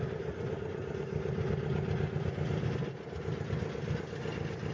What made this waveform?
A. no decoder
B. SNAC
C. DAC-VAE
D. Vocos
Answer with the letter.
A